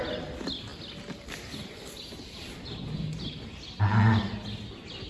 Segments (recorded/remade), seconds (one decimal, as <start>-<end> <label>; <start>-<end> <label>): 0.0-5.1 recorded